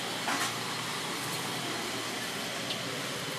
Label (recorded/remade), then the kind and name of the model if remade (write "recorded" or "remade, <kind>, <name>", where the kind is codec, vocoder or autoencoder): recorded